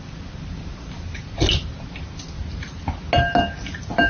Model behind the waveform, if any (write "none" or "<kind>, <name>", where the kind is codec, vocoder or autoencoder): none